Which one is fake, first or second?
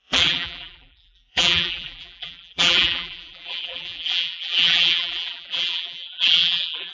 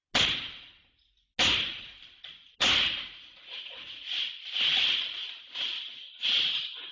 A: first